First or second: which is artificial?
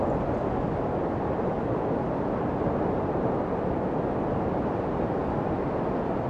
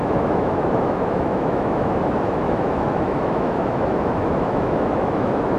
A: second